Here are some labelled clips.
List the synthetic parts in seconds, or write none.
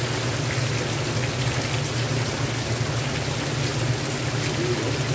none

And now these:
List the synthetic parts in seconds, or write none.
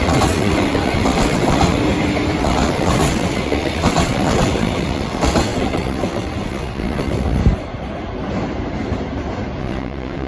0.0-1.8 (vocoder, WaveNeXt); 2.4-7.4; 9.6-10.3